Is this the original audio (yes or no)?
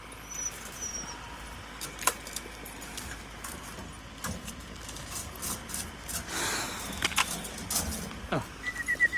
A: yes